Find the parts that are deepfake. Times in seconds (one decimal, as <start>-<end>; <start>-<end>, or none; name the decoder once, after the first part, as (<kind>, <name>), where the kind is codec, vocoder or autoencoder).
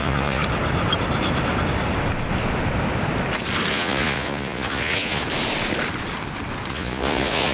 0.0-0.4 (vocoder, Vocos); 3.7-5.2; 6.7-7.5